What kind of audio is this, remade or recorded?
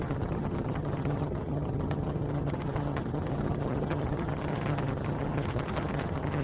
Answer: remade